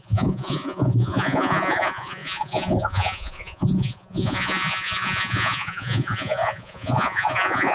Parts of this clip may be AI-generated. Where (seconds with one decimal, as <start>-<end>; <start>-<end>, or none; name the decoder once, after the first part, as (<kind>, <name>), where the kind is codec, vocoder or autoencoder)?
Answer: 0.0-7.7 (vocoder, Vocos)